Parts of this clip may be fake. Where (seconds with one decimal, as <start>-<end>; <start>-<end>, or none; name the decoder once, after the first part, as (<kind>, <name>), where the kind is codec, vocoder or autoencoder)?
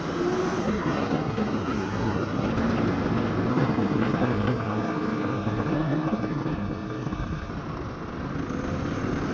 0.6-2.5 (codec, SNAC); 3.5-7.5